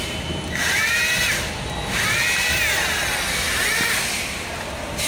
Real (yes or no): yes